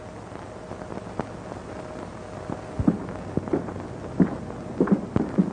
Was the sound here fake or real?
real